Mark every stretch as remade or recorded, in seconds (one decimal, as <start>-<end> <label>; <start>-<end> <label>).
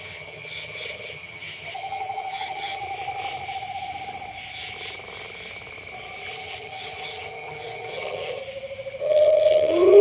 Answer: 0.0-2.8 remade; 2.8-6.3 recorded; 6.3-8.4 remade; 8.4-9.0 recorded; 9.0-10.0 remade